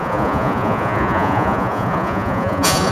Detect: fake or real fake